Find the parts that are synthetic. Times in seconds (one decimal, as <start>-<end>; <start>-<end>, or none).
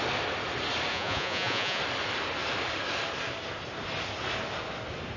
0.9-1.8